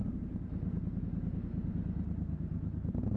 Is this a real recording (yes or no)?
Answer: yes